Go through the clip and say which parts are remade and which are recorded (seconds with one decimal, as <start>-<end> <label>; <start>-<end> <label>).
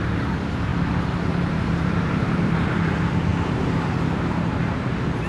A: 0.0-0.7 remade; 0.7-1.3 recorded; 1.3-5.3 remade